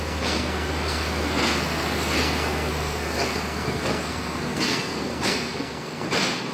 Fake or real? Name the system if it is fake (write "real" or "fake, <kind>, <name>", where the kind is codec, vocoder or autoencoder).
fake, codec, SNAC